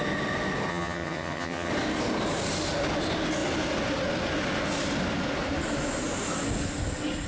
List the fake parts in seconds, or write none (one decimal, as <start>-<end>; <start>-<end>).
0.7-1.7